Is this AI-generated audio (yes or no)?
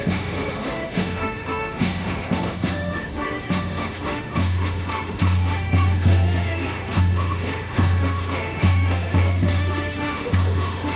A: yes